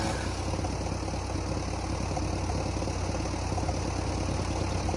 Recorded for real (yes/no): yes